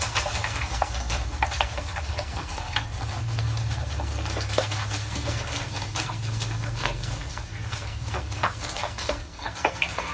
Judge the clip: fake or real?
fake